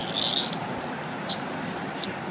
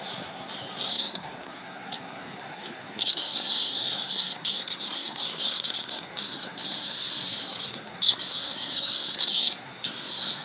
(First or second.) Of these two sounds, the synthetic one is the second